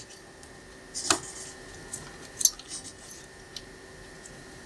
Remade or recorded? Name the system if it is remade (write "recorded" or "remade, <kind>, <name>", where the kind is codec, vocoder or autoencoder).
recorded